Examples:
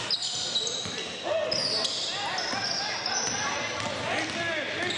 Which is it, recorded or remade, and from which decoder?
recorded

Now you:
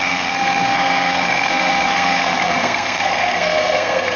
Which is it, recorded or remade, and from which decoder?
remade, codec, SNAC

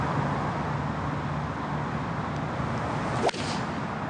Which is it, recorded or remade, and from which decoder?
recorded